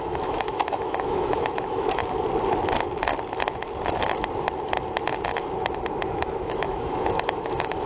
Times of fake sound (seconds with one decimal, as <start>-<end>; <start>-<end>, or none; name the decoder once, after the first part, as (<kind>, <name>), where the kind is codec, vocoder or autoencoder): 0.0-2.0 (autoencoder, DAC-VAE); 6.1-7.9

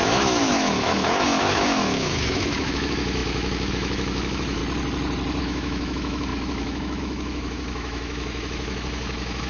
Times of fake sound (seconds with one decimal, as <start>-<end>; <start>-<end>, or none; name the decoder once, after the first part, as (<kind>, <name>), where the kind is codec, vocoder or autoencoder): 0.0-4.6 (autoencoder, DAC-VAE); 5.4-9.5

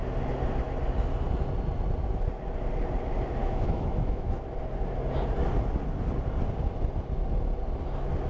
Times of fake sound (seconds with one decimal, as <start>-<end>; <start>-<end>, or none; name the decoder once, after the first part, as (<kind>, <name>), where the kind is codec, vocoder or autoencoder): 3.4-4.4 (autoencoder, DAC-VAE)

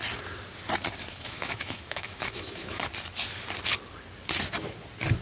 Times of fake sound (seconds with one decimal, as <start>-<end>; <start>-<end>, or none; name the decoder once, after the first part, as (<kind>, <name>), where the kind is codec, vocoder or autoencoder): 1.1-2.8 (autoencoder, DAC-VAE)